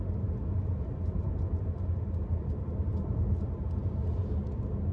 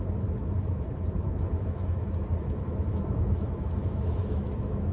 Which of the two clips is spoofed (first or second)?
second